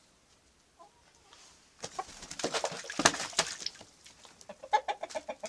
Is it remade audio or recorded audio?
recorded